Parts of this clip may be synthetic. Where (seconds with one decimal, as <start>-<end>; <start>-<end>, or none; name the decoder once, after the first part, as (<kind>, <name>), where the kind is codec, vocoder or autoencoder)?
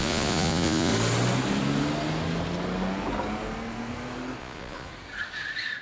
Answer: 0.0-0.9 (vocoder, Vocos); 4.4-4.9